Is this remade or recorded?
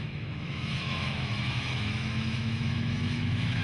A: remade